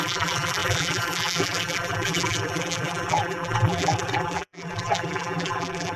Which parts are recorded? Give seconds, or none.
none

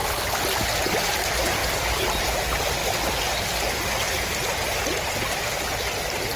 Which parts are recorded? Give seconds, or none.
0.0-6.4

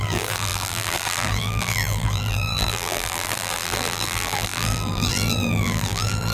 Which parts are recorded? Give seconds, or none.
none

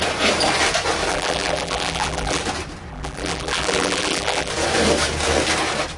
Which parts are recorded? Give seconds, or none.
0.0-1.1; 2.4-2.9; 4.5-6.0

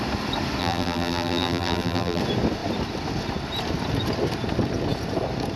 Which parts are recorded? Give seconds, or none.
0.0-0.6; 2.2-5.6

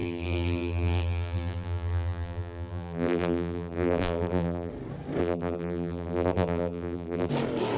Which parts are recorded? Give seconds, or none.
4.7-5.2; 7.3-7.8

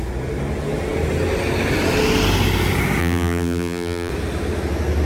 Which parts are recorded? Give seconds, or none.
0.0-3.0; 4.1-5.1